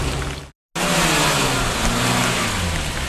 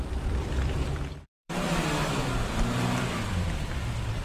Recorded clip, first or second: first